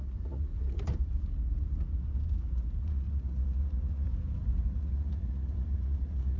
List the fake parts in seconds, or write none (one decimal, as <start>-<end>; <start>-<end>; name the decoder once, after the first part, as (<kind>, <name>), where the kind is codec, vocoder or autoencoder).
0.0-0.5 (vocoder, Vocos); 2.8-4.1; 4.7-6.4